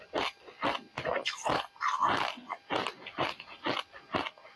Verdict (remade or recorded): recorded